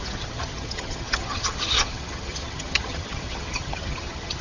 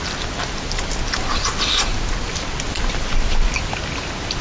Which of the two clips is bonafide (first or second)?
second